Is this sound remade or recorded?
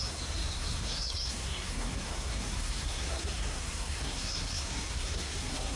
remade